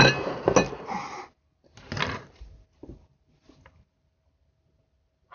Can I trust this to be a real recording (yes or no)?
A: yes